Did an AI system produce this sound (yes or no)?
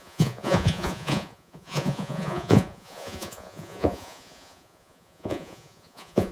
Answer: yes